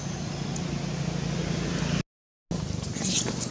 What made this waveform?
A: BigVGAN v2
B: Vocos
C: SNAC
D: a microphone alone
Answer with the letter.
D